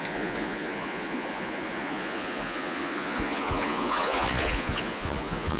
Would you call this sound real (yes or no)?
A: no